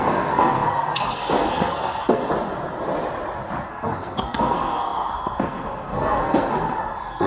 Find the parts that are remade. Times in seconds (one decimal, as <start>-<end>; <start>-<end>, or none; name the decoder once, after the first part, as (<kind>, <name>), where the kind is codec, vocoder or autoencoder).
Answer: 0.0-2.2 (codec, SNAC); 3.7-7.3